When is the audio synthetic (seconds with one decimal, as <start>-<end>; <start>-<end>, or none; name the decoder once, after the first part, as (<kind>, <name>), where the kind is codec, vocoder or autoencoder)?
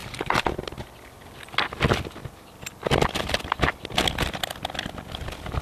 0.0-1.5 (vocoder, BigVGAN v2)